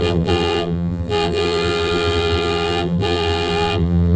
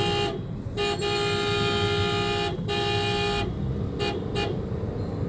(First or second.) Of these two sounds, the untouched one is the second